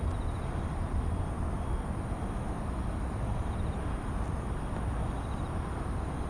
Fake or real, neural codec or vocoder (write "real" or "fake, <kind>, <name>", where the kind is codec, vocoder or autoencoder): real